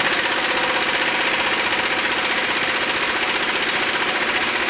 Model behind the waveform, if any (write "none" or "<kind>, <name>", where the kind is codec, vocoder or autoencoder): none